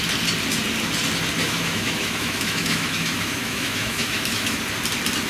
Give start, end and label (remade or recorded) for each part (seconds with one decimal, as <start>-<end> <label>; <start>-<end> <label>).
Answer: 0.0-1.4 recorded; 1.4-4.6 remade; 4.6-5.3 recorded